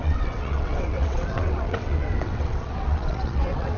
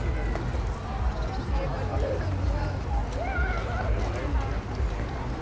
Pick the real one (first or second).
second